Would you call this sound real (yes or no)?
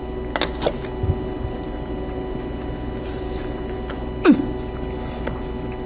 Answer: yes